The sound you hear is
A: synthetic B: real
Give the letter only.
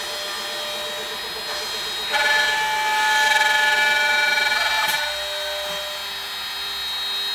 B